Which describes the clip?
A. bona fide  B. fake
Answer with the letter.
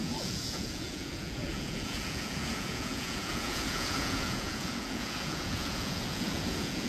B